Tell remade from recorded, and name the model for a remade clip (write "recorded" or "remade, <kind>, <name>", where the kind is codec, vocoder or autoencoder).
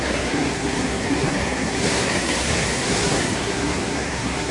remade, codec, SNAC